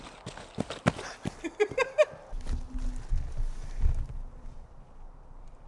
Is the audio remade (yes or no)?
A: no